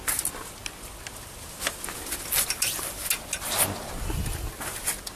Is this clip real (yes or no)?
yes